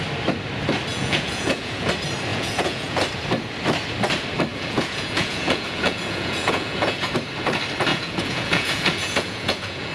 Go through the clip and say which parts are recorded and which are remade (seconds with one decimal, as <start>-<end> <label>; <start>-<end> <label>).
0.0-0.9 recorded; 0.9-1.9 remade; 1.9-2.3 recorded; 2.3-3.0 remade; 3.0-4.5 recorded; 4.5-7.1 remade; 7.1-7.9 recorded; 7.9-9.9 remade